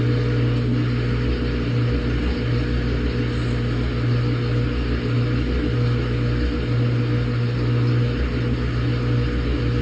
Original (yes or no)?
yes